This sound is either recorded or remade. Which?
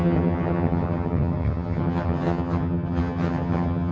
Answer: remade